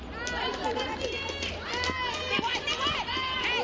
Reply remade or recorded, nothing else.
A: recorded